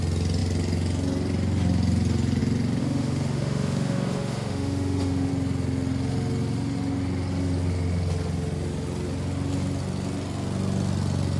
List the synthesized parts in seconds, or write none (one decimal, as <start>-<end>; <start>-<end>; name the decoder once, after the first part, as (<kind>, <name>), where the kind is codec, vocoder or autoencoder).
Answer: 2.8-5.3 (autoencoder, DAC-VAE)